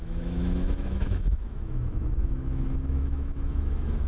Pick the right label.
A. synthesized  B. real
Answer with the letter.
A